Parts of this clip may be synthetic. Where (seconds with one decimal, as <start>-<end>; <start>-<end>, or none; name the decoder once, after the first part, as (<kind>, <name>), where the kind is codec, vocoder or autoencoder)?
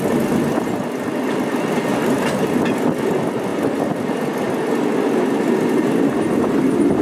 1.9-2.5 (vocoder, BigVGAN v2)